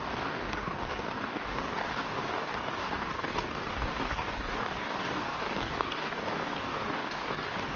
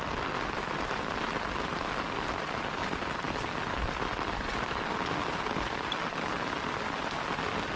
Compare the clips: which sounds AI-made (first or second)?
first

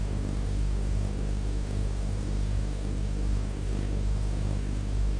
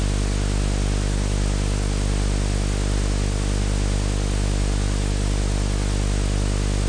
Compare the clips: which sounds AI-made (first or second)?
first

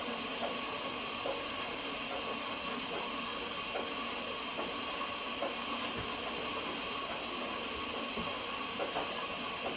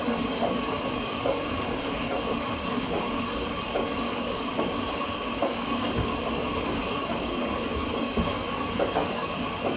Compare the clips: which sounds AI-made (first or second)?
second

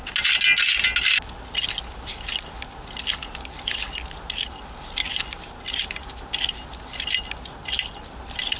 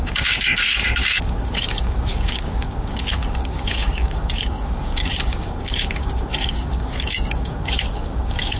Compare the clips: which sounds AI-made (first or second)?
second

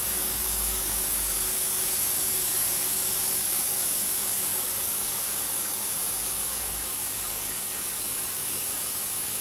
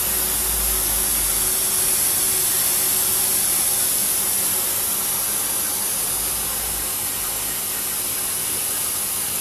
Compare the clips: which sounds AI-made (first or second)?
first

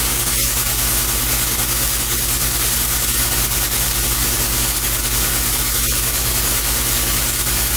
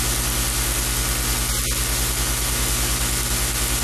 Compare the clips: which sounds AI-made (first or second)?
first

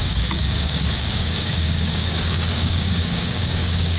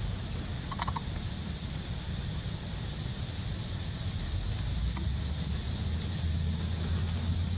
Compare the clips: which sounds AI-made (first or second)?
first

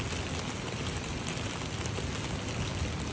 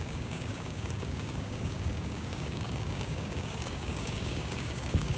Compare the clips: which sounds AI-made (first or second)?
second